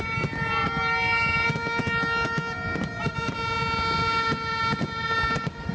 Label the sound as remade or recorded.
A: recorded